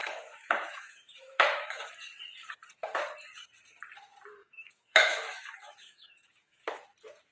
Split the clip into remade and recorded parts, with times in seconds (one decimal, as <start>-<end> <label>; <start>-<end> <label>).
0.0-1.9 remade; 1.9-4.4 recorded; 4.4-6.7 remade; 6.7-7.3 recorded